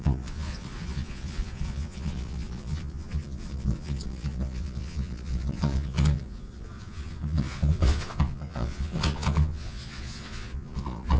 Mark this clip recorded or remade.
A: remade